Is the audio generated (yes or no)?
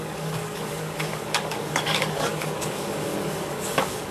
yes